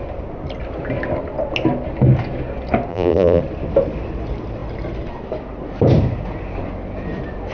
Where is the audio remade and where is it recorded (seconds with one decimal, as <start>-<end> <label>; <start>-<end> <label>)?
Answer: 0.0-2.9 recorded; 2.9-3.4 remade; 3.4-7.5 recorded